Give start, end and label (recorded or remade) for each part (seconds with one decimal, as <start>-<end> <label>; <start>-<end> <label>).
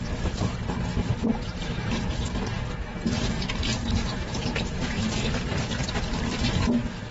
0.0-1.0 recorded; 1.0-1.9 remade; 1.9-2.9 recorded; 2.9-6.2 remade; 6.2-7.1 recorded